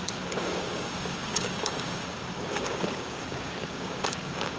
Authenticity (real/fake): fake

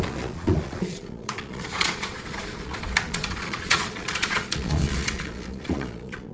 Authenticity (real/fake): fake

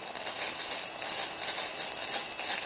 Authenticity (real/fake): real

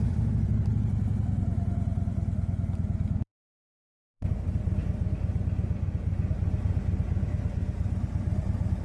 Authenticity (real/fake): real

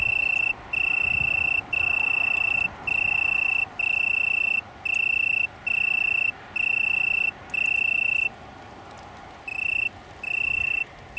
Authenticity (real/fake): real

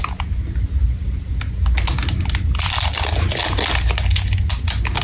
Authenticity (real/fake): real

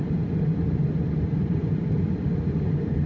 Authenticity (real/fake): real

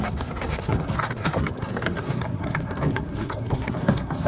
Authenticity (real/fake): fake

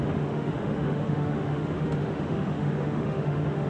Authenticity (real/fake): fake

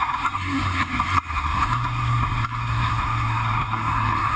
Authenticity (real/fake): fake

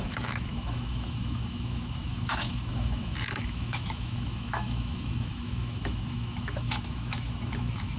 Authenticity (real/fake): fake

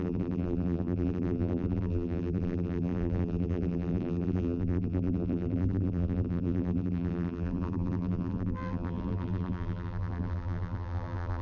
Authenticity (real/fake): fake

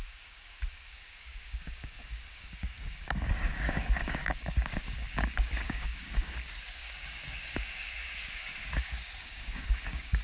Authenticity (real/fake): fake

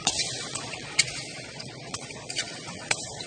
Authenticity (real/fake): fake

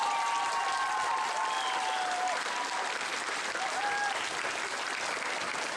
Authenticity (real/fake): real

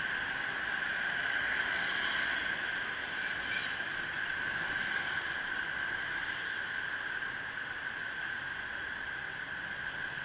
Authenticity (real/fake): real